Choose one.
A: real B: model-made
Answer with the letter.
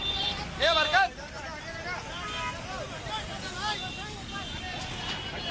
A